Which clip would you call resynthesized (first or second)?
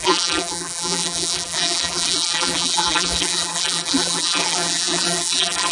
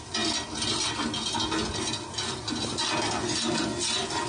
first